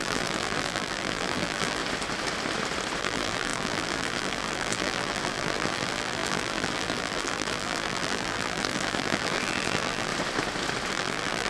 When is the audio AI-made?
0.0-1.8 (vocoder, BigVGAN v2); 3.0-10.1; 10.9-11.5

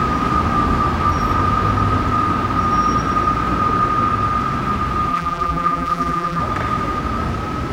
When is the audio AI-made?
5.1-6.4 (vocoder, BigVGAN v2)

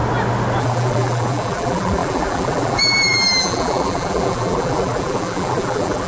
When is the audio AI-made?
0.6-6.1 (vocoder, BigVGAN v2)

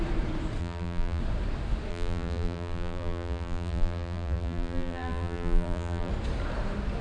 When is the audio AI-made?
0.6-1.2 (vocoder, BigVGAN v2); 1.9-6.1

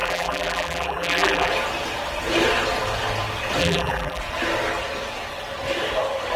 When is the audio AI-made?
0.0-1.5 (vocoder, BigVGAN v2); 3.6-4.2

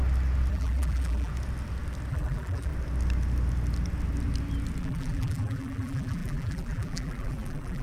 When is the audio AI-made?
0.5-1.3 (vocoder, BigVGAN v2); 2.1-2.7; 4.8-7.8

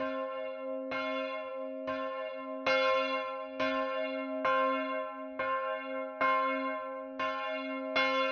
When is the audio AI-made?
none

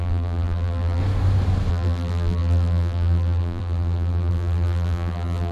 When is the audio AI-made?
0.0-1.0 (vocoder, BigVGAN v2); 1.7-5.5